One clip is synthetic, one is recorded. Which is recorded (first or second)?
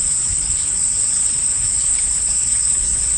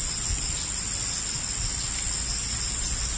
second